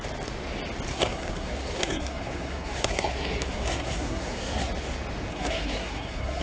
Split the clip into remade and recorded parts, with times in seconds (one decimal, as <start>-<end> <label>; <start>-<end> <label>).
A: 0.0-0.9 recorded; 0.9-4.7 remade; 4.7-5.3 recorded; 5.3-6.4 remade